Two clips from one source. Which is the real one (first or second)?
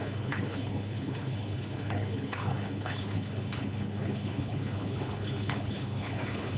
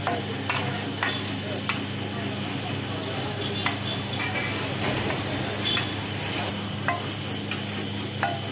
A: second